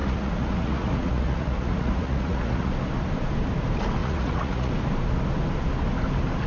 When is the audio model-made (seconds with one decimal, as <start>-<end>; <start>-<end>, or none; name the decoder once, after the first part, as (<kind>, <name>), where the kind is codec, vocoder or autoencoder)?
0.0-2.7 (vocoder, Vocos); 4.0-4.7